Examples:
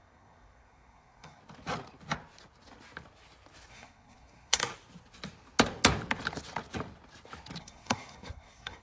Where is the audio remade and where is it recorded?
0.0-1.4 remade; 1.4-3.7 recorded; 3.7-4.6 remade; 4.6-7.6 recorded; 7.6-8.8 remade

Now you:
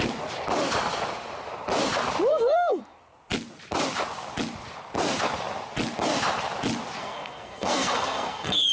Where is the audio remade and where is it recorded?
0.0-2.3 recorded; 2.3-2.8 remade; 2.8-7.0 recorded; 7.0-8.7 remade